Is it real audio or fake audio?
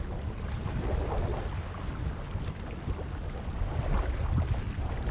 real